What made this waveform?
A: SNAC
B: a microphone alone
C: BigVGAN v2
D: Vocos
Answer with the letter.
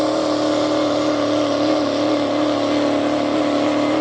B